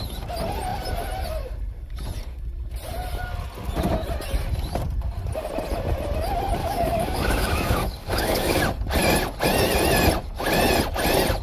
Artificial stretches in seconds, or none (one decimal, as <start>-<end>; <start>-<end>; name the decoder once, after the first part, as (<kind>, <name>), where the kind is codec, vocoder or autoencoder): 6.6-8.6 (codec, DAC)